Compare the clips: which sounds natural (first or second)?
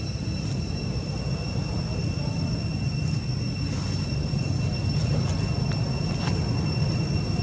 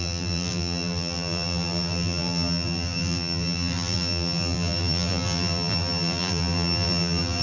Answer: first